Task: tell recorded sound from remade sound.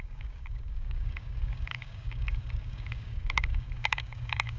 remade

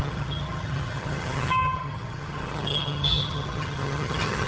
remade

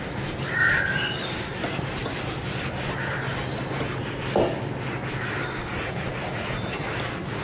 recorded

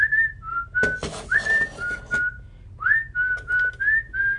recorded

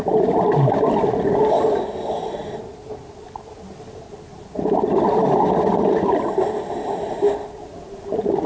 recorded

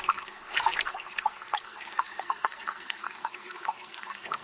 remade